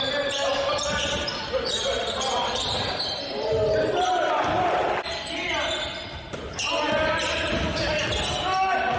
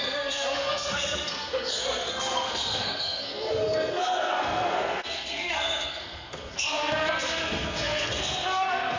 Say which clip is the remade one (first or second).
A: second